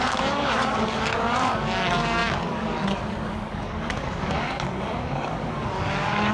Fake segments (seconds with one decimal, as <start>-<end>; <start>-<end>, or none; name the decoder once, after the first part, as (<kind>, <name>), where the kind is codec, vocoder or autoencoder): 0.0-6.3 (codec, DAC)